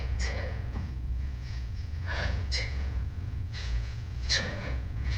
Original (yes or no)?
no